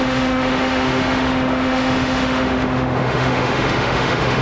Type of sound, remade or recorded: remade